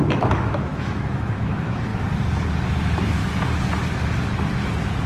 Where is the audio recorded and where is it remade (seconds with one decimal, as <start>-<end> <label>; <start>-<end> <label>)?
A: 0.0-1.9 remade; 1.9-2.8 recorded; 2.8-3.2 remade; 3.2-5.1 recorded